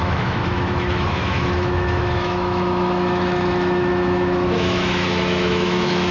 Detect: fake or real fake